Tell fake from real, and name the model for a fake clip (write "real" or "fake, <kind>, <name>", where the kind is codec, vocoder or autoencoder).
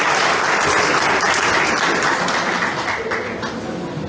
real